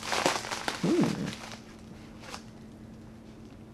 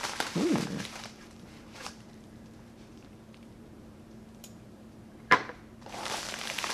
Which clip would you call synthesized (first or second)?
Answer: second